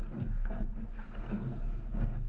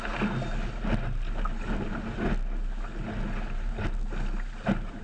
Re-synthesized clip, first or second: first